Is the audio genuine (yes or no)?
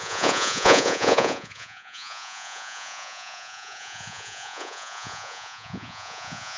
no